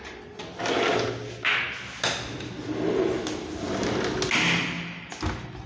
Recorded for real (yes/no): yes